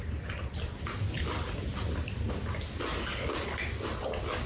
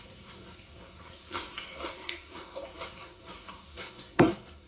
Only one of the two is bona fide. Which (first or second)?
first